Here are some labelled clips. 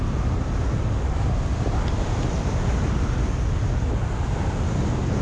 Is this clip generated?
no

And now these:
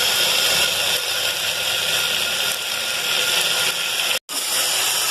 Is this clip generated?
no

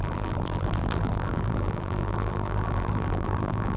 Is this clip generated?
yes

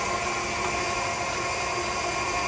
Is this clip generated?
no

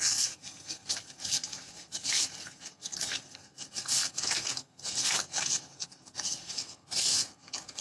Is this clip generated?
yes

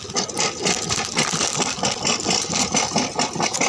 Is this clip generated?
no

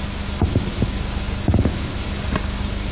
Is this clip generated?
no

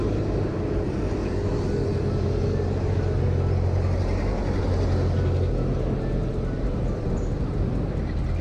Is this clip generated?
no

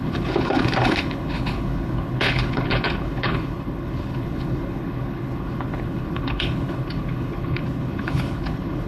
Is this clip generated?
yes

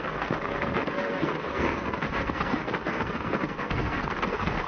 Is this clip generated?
yes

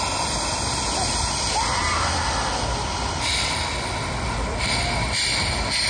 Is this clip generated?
no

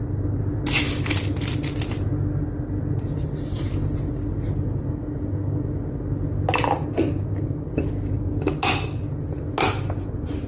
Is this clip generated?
no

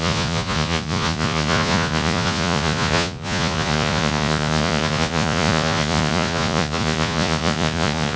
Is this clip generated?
yes